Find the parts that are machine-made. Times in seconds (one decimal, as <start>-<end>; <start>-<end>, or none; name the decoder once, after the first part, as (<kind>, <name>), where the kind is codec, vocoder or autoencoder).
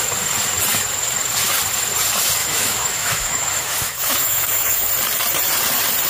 2.4-4.9 (autoencoder, DAC-VAE)